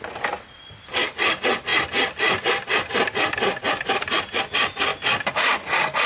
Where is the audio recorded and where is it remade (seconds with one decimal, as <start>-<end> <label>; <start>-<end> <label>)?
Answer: 0.0-6.1 recorded